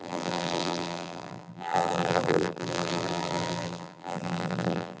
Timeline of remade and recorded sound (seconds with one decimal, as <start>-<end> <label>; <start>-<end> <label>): 0.0-5.0 remade